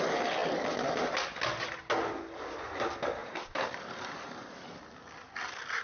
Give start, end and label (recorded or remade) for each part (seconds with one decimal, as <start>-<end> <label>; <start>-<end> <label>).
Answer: 0.0-3.2 recorded; 3.2-4.8 remade; 4.8-5.8 recorded